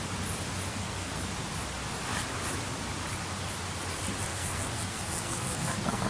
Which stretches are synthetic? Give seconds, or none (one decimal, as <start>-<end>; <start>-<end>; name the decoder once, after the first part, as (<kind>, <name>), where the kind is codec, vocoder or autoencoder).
0.7-1.2 (codec, SNAC); 4.3-6.1